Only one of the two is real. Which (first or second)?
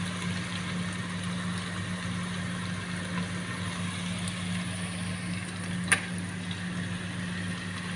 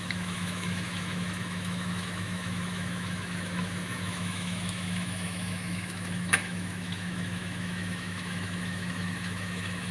first